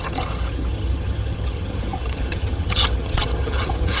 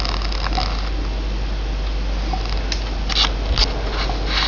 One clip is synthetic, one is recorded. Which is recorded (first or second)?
second